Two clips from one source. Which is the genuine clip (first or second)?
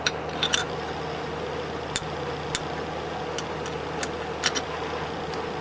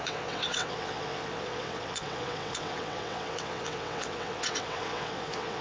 first